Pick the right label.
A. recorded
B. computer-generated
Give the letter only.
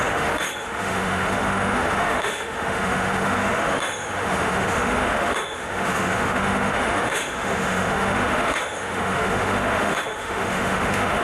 B